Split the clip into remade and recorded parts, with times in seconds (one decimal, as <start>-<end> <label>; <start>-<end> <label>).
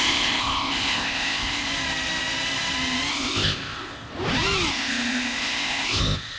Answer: 0.0-1.7 remade; 1.7-3.1 recorded; 3.1-4.1 remade; 4.1-4.7 recorded; 4.7-6.4 remade